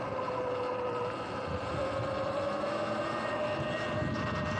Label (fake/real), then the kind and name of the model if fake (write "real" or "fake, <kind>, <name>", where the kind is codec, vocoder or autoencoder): real